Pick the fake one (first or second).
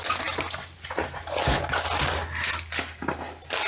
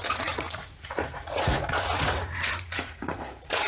second